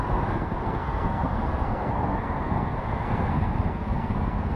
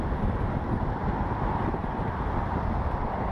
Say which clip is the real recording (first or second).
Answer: second